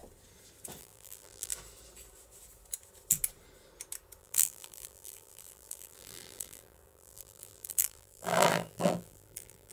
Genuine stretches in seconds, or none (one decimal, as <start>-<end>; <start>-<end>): 0.0-0.8; 1.5-4.2

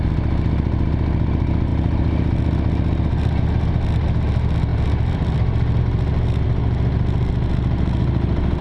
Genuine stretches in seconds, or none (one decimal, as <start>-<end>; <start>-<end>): 0.0-4.7; 5.8-8.6

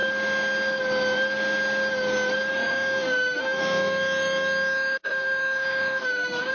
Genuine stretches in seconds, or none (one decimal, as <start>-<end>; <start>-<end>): 0.0-2.5

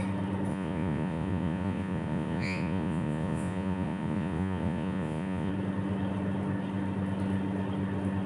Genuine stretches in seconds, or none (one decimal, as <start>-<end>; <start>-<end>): 0.0-0.5; 5.5-8.3